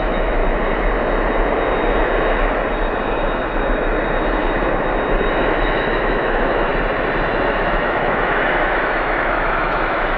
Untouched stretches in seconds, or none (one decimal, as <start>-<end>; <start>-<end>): 0.4-5.3; 6.7-7.5